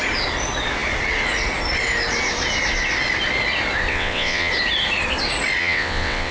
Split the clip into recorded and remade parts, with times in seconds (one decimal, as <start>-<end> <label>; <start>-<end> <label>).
0.0-3.9 recorded; 3.9-4.5 remade; 4.5-5.6 recorded; 5.6-6.3 remade